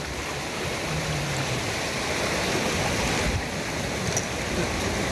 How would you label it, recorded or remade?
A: recorded